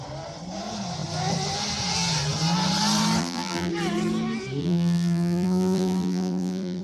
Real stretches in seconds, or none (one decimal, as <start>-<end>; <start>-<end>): 0.0-3.2; 3.7-4.6